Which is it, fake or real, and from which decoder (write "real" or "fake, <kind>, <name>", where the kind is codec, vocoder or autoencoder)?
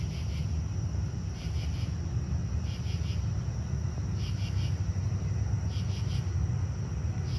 real